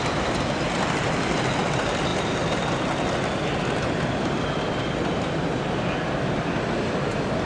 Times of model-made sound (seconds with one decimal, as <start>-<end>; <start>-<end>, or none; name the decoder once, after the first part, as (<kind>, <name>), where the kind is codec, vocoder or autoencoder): none